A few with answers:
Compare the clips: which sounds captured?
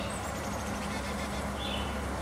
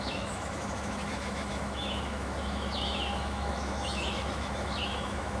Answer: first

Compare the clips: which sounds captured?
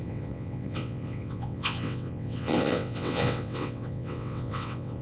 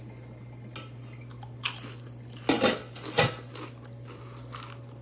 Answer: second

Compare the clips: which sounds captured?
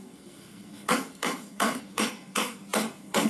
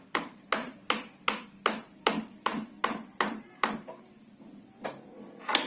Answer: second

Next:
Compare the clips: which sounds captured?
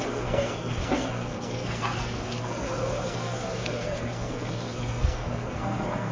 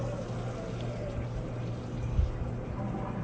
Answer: second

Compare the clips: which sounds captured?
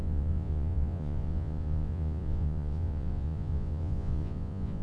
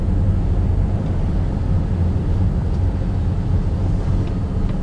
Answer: second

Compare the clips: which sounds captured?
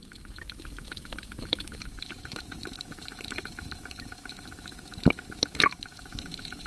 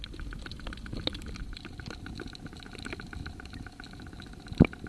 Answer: second